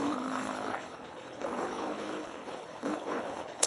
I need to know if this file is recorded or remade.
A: remade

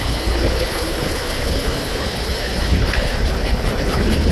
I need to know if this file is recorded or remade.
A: remade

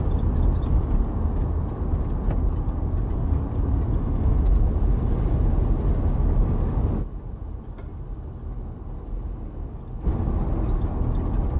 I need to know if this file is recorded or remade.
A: recorded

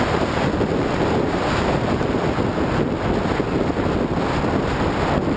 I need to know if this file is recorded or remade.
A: recorded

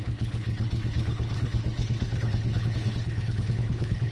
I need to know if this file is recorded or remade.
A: remade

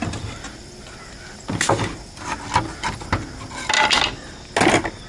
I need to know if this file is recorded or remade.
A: recorded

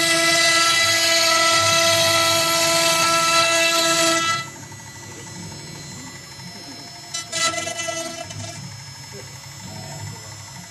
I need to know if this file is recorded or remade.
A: recorded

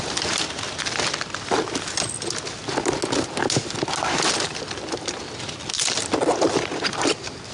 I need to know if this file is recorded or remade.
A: recorded